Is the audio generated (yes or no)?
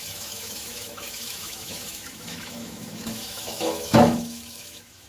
yes